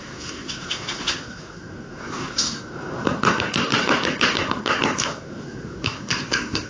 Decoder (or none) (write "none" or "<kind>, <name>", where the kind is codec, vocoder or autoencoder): codec, SNAC